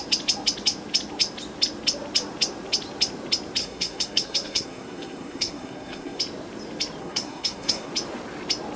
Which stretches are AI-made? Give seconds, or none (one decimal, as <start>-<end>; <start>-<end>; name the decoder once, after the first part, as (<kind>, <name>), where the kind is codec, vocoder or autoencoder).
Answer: 3.6-6.2 (codec, SNAC); 7.0-7.9

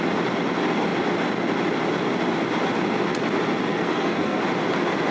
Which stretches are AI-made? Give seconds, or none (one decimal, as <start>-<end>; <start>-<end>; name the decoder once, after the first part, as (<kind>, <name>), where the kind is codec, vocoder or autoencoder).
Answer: 3.7-4.4 (codec, SNAC)

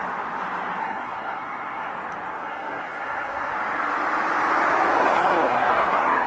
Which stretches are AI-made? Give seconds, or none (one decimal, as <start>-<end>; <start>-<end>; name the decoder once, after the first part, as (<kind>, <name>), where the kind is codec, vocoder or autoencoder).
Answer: 0.8-1.9 (codec, SNAC); 2.3-3.5; 5.0-6.3